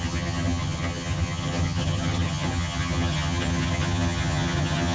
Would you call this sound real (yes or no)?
no